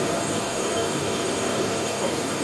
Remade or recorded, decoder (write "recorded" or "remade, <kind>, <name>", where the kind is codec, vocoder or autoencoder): remade, codec, DAC